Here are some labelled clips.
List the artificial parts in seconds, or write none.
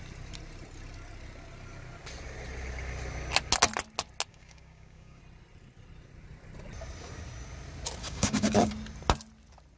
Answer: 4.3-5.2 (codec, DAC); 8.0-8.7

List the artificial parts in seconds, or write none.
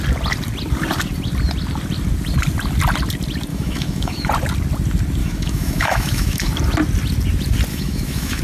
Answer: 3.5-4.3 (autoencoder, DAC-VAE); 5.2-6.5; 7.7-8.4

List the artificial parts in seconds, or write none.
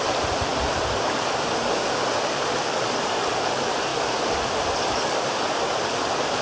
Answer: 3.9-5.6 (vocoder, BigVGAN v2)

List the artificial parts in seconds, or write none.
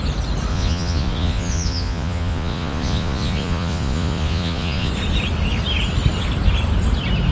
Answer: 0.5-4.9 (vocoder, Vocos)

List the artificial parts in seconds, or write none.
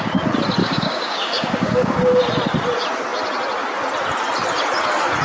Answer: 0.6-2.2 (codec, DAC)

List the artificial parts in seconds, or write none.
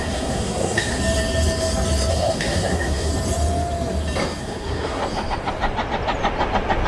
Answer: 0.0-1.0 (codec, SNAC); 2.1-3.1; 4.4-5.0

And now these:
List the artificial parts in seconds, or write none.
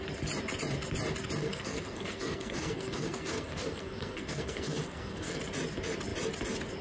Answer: 1.4-5.4 (codec, SNAC)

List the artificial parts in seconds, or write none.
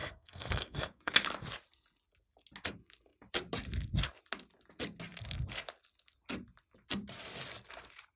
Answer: 0.0-1.1 (codec, SNAC)